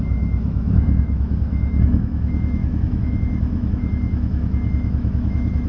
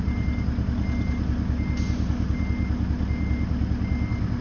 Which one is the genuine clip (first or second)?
second